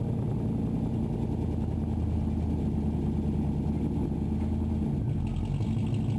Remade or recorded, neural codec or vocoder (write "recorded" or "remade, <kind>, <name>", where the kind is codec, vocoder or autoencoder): recorded